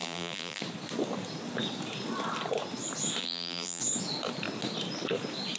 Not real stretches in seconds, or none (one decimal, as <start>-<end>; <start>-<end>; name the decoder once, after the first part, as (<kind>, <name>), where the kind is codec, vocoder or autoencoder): 0.0-0.6 (vocoder, BigVGAN v2); 3.2-3.8